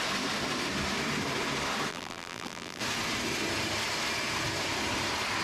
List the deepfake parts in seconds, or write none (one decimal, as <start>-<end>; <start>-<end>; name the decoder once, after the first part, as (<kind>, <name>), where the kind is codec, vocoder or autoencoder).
1.9-2.8 (vocoder, BigVGAN v2)